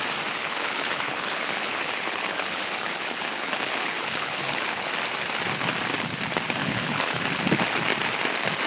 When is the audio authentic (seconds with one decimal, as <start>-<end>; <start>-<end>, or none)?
0.0-0.4; 4.9-6.6; 7.2-8.7